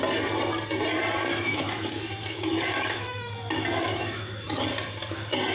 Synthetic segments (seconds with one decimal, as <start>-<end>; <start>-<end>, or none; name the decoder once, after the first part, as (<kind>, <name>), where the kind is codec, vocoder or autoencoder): 1.3-4.6 (autoencoder, DAC-VAE)